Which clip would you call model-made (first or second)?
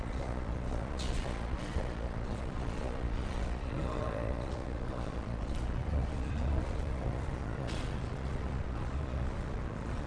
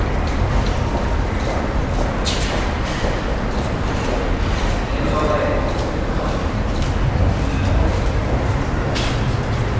first